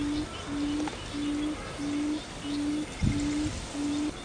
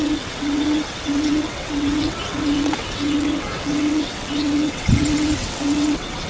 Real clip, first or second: first